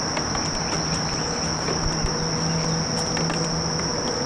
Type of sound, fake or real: real